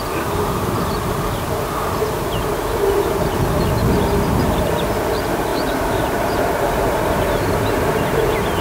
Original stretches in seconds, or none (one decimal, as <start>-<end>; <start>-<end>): 0.0-5.5